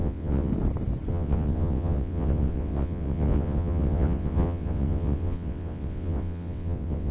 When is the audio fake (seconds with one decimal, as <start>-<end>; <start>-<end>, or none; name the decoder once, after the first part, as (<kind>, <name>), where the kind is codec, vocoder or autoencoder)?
0.0-0.5 (vocoder, WaveNeXt); 1.1-7.1